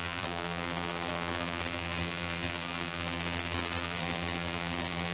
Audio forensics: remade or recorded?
remade